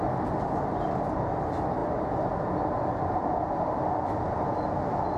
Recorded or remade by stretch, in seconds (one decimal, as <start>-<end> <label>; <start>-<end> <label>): 0.0-5.2 recorded